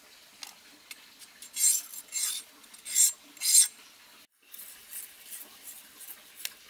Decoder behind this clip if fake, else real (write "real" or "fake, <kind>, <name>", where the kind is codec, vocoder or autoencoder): real